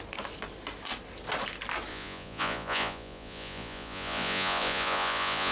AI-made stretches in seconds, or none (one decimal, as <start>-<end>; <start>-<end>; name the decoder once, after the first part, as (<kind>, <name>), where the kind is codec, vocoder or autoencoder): 1.9-5.5 (vocoder, Vocos)